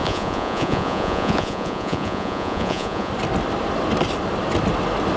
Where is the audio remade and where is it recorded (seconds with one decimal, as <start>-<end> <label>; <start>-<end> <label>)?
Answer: 0.0-3.1 remade; 3.1-5.2 recorded